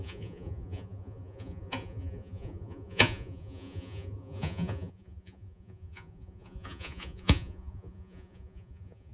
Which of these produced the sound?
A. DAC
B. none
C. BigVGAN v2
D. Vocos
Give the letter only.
D